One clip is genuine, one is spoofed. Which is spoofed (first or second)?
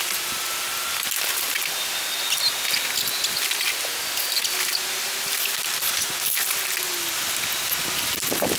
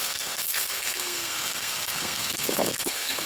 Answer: second